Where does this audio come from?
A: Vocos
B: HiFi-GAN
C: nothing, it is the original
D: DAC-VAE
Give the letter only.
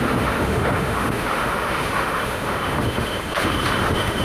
D